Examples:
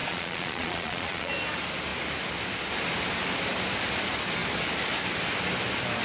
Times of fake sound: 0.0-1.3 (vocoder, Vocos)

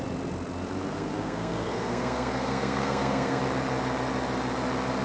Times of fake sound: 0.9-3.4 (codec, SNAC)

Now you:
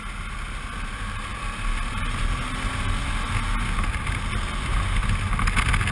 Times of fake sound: none